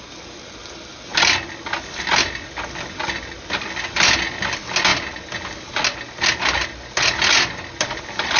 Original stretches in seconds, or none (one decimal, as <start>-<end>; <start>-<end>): 0.0-8.4